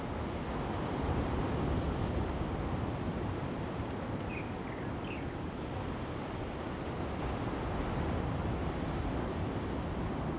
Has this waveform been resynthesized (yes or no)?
no